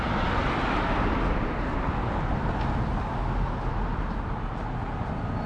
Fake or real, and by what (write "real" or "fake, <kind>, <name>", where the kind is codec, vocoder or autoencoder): real